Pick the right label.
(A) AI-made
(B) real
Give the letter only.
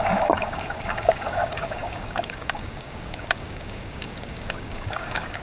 A